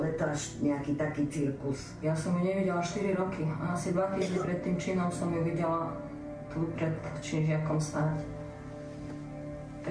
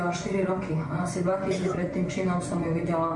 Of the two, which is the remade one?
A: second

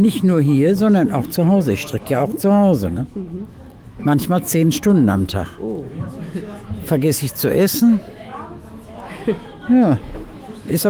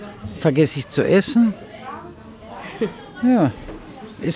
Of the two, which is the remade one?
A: first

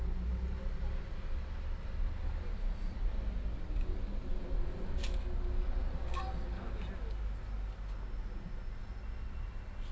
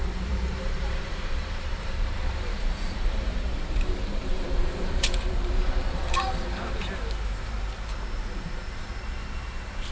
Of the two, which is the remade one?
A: second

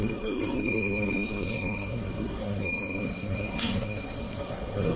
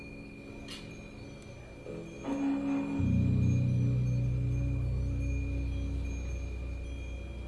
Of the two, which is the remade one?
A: first